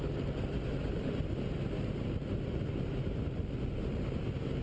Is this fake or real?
real